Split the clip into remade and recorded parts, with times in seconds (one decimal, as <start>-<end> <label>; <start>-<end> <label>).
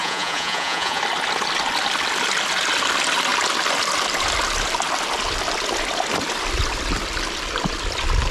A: 0.0-1.0 remade; 1.0-8.3 recorded